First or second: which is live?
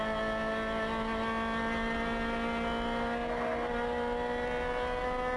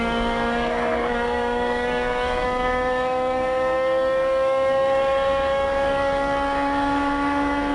first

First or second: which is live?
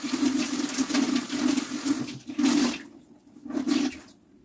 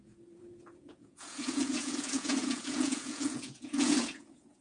first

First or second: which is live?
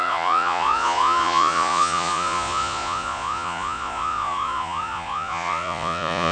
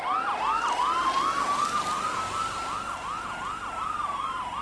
second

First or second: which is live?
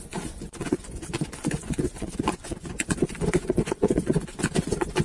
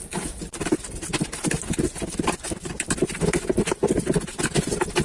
second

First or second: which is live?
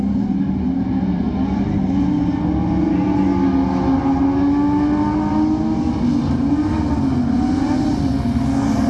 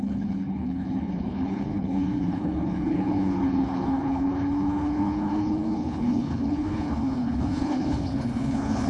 first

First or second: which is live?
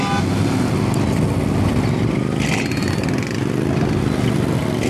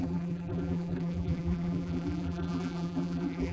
first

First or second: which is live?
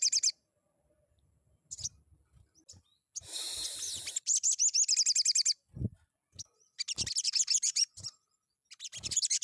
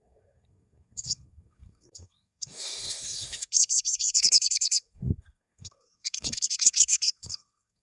first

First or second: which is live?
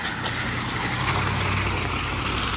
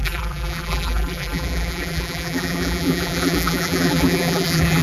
first